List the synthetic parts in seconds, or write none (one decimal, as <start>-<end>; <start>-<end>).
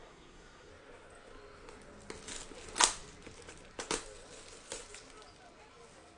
0.0-0.7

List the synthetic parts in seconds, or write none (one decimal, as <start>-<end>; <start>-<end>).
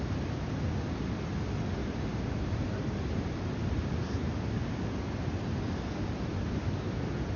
1.8-3.6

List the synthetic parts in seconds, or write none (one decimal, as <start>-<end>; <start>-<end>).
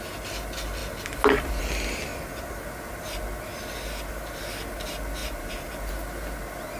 none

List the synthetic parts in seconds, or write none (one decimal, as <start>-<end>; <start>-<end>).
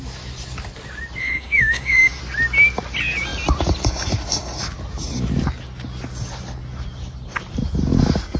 1.2-2.2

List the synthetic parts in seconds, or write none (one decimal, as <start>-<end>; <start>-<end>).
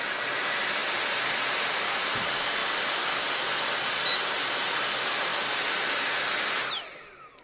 none